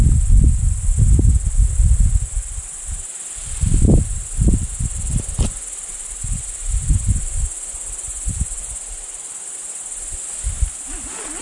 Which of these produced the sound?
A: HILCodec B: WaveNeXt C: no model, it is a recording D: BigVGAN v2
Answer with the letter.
D